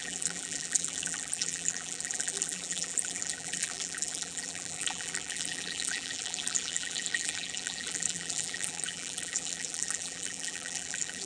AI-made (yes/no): yes